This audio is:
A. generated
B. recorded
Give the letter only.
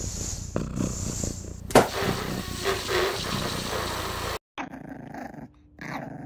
B